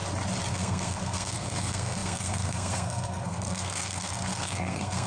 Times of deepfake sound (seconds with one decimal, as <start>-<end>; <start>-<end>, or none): 0.5-5.1